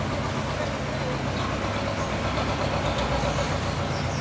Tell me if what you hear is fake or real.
real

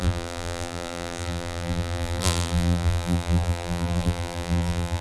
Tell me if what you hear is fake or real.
fake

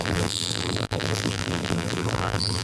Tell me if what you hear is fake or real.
fake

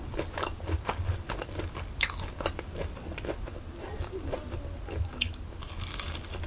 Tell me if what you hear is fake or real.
real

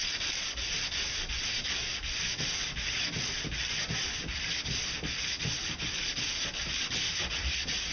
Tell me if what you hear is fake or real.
fake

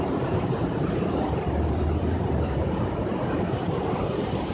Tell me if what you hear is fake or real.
fake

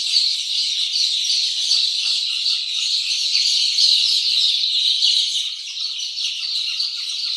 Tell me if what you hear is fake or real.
real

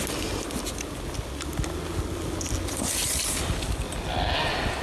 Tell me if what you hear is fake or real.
real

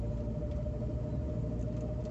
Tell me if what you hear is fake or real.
real